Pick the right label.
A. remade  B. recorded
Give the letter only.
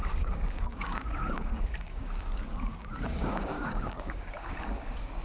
A